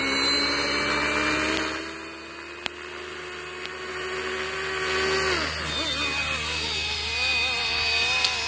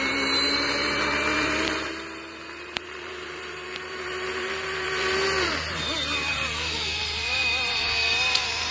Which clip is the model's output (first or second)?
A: second